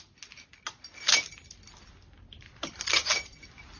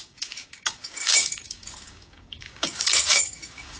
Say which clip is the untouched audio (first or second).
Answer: first